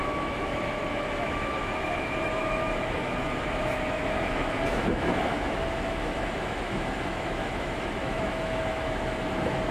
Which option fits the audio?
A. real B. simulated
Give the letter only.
B